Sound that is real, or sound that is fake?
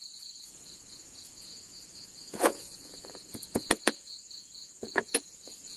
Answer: fake